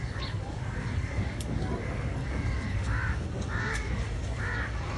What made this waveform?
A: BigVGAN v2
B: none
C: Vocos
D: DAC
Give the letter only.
D